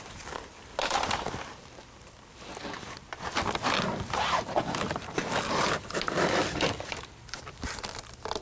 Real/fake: fake